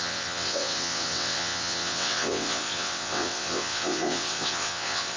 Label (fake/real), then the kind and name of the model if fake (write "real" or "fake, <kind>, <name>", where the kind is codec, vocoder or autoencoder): fake, vocoder, WaveNeXt